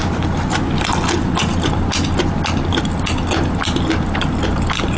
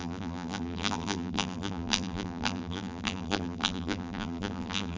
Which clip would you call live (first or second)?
first